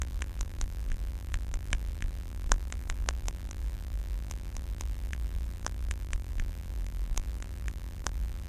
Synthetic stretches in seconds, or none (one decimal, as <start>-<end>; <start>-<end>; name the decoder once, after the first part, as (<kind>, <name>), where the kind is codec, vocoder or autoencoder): 0.0-8.5 (vocoder, BigVGAN v2)